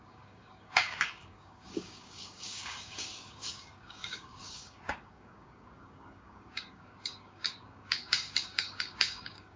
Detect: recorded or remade remade